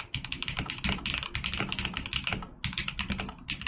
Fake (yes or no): no